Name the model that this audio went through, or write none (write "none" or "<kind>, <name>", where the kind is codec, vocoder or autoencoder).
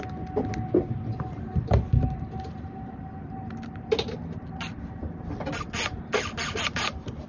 none